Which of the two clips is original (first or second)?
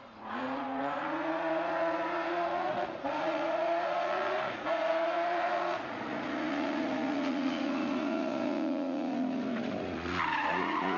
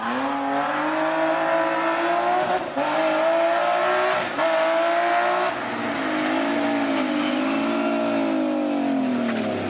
second